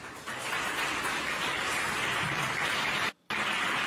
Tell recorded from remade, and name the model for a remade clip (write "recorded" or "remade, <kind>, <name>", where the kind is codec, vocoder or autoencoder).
recorded